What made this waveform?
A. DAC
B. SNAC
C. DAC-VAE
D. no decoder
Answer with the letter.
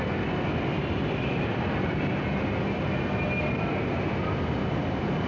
D